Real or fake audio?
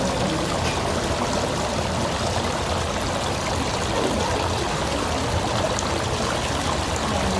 real